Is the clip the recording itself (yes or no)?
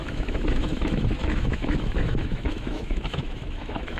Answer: no